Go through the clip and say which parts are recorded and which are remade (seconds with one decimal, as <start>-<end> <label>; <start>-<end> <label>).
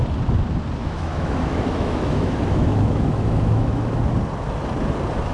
0.0-0.8 recorded; 0.8-4.0 remade; 4.0-5.3 recorded